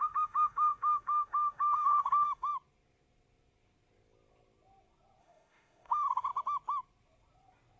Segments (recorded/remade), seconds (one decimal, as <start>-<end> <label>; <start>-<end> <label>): 0.0-2.5 remade; 2.5-5.2 recorded; 5.2-6.3 remade; 6.3-7.8 recorded